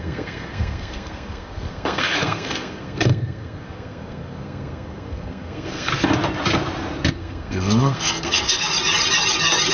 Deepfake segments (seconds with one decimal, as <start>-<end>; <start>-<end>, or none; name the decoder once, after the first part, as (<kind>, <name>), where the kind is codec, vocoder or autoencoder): 0.0-5.9 (codec, SNAC); 7.1-8.7